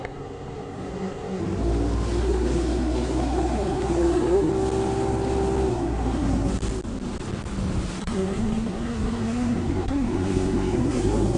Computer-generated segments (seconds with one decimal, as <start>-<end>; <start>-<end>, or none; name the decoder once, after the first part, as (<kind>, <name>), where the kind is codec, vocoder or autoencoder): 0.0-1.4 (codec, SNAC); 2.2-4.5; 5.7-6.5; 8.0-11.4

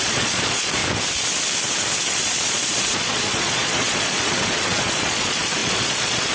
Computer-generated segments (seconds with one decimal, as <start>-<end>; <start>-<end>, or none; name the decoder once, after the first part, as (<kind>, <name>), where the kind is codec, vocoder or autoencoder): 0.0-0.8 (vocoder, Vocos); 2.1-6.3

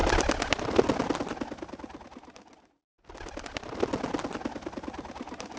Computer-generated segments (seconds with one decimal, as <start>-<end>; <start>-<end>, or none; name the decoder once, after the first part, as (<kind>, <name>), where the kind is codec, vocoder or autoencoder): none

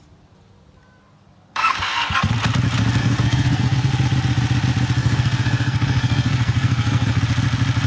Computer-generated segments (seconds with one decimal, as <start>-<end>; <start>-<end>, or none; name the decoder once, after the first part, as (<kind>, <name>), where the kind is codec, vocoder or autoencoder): 1.5-2.3 (codec, SNAC); 3.0-3.9; 5.0-7.2